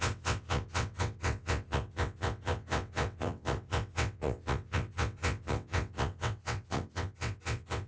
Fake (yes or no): yes